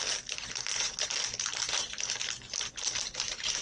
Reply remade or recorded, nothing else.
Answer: recorded